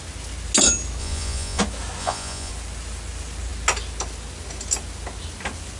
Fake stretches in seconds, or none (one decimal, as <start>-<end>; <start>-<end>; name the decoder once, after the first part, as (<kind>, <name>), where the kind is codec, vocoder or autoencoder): 1.0-1.6 (vocoder, Vocos); 2.0-2.5